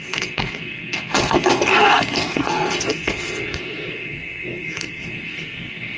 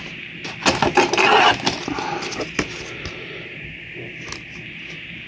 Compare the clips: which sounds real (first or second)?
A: second